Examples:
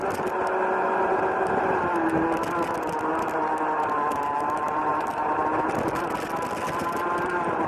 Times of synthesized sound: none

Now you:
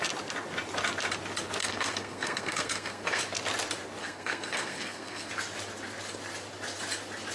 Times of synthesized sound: 1.6-3.2 (codec, SNAC); 4.0-5.3

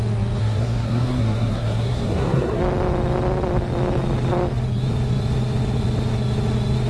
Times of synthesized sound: 0.4-2.6 (codec, SNAC)

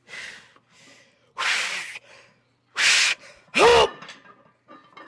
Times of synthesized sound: none